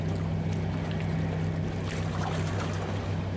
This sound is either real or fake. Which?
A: real